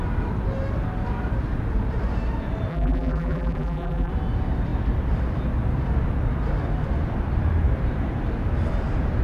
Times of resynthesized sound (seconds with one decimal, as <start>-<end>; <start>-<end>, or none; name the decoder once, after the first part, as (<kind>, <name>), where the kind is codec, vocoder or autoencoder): 2.7-4.1 (vocoder, BigVGAN v2)